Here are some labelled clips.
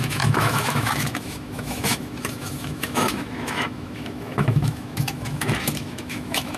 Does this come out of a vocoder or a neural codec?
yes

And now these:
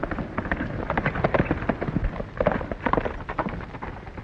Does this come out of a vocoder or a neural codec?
no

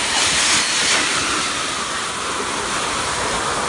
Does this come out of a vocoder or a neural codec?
no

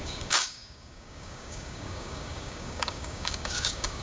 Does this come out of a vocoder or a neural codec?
yes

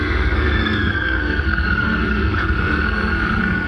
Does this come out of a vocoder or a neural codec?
yes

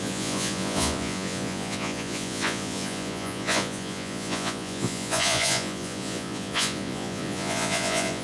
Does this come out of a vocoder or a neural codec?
yes